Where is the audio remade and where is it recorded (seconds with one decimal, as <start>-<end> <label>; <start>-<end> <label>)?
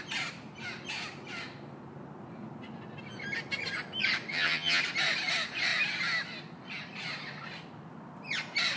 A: 0.0-4.3 recorded; 4.3-4.8 remade; 4.8-8.8 recorded